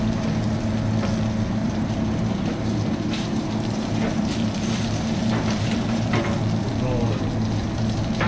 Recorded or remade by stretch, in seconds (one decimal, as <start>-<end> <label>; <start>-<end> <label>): 0.0-1.6 recorded; 1.6-6.2 remade; 6.2-8.3 recorded